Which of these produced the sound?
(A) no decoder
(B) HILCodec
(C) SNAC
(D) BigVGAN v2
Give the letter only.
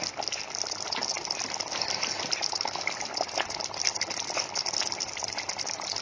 A